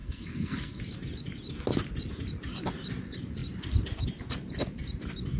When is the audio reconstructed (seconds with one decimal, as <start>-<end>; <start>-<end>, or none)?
0.0-0.8